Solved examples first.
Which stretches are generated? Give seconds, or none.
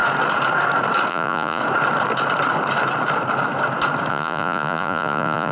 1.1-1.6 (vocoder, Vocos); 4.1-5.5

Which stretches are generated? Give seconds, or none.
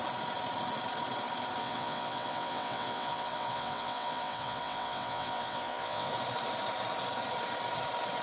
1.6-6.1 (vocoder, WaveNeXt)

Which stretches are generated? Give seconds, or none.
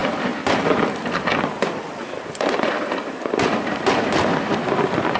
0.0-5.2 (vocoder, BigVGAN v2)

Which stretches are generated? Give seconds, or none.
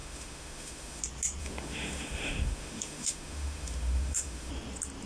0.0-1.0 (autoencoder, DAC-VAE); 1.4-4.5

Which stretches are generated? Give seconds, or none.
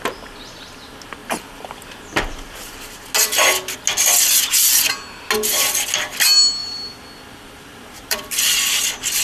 6.6-8.3 (vocoder, BigVGAN v2)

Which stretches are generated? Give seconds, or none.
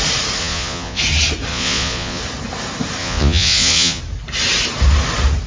0.4-1.0 (vocoder, Vocos); 1.5-2.2; 3.0-4.0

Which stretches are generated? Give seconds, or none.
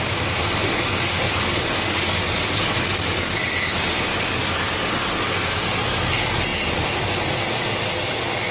0.7-2.7 (codec, DAC); 4.1-6.1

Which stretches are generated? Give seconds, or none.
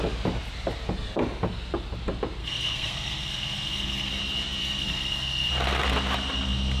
2.4-4.1 (codec, SNAC); 4.6-5.5